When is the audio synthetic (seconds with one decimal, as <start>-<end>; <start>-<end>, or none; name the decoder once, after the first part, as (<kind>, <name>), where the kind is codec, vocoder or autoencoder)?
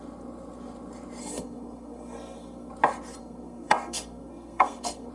1.2-2.7 (codec, SNAC); 3.2-5.1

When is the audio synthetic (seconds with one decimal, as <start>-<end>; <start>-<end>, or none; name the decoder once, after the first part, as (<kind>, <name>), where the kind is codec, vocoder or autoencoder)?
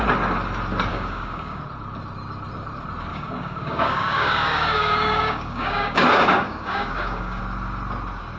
0.9-1.6 (codec, DAC); 3.1-7.4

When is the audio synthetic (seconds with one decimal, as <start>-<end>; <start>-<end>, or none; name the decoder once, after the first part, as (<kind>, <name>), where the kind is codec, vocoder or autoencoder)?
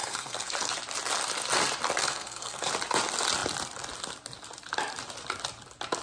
0.0-0.5 (codec, SNAC); 2.0-2.7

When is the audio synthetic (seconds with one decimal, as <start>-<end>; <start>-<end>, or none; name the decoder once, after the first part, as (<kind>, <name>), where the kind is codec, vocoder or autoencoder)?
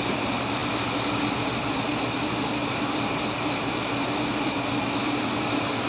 0.0-0.6 (vocoder, BigVGAN v2); 2.7-5.9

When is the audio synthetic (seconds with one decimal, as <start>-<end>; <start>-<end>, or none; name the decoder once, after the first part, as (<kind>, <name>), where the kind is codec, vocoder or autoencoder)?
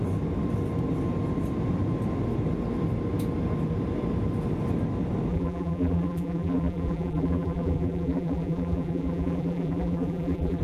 5.3-10.6 (vocoder, BigVGAN v2)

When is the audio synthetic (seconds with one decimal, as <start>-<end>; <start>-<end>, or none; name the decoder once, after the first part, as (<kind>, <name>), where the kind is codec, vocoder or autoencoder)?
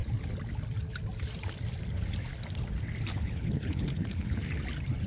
3.1-4.4 (codec, HILCodec)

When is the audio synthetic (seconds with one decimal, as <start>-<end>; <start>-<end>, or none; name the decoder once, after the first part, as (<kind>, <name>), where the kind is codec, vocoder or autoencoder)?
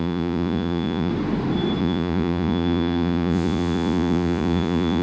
0.0-1.1 (vocoder, Vocos); 1.8-5.0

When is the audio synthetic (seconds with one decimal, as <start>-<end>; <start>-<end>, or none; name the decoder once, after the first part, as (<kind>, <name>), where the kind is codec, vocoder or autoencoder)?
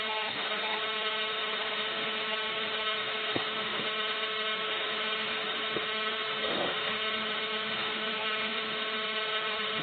0.0-9.8 (autoencoder, DAC-VAE)